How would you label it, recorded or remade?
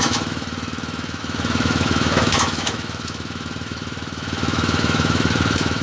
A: remade